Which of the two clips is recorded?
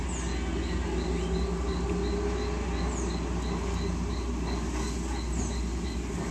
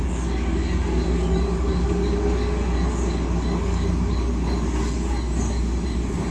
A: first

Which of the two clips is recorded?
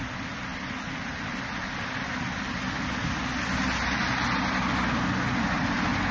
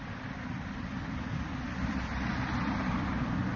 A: first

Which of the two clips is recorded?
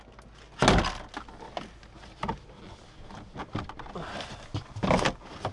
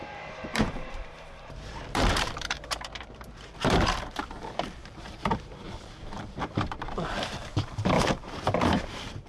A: first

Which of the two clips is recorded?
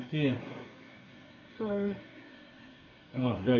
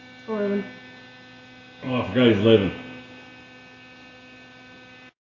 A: second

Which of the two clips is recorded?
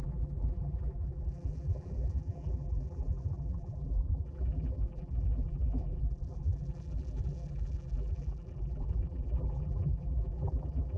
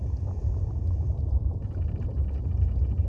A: second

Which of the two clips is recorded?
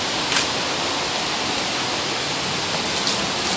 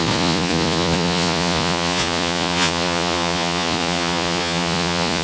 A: first